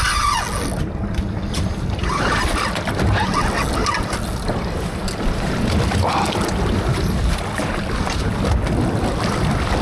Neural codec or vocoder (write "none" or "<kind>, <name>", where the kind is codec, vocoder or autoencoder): none